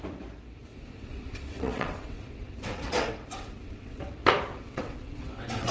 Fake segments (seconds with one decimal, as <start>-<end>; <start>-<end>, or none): 0.7-4.1; 4.5-5.7